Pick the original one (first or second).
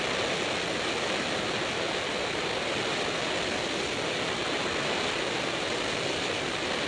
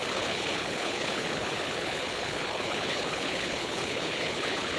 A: first